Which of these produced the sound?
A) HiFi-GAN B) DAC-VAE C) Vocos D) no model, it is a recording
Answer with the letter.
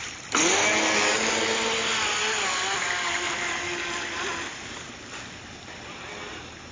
D